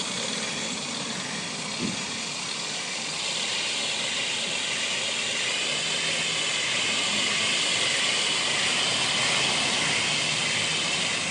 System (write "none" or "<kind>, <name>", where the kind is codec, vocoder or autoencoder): none